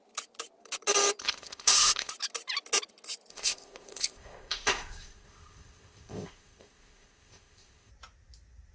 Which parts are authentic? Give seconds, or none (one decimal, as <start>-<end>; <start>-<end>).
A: 0.0-1.2; 2.1-3.3; 7.9-8.7